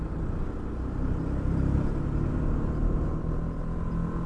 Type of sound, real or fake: real